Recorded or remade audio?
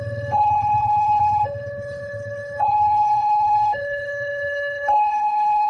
remade